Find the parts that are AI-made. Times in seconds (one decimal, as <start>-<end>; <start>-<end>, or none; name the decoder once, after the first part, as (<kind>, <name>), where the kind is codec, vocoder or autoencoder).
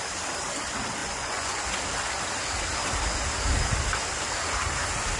1.0-1.6 (vocoder, Vocos)